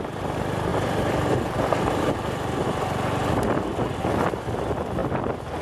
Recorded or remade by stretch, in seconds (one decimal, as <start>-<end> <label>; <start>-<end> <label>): 0.0-0.7 recorded; 0.7-4.1 remade; 4.1-5.6 recorded